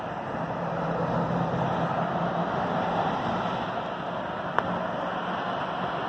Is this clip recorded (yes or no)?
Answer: yes